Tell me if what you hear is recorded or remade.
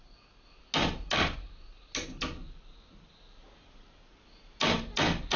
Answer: recorded